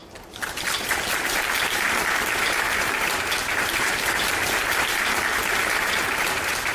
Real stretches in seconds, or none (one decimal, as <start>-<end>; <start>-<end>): 0.0-0.8